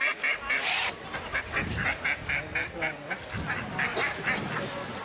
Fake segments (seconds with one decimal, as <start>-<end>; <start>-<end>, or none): none